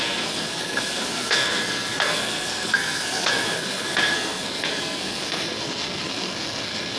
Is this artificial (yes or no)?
yes